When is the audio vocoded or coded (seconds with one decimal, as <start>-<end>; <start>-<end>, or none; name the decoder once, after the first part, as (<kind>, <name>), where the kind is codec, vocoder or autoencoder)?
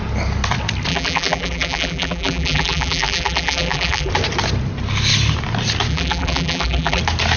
0.9-4.1 (vocoder, BigVGAN v2); 5.9-7.0